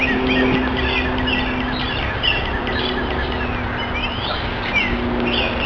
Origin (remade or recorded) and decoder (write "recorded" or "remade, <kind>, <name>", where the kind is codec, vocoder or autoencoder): recorded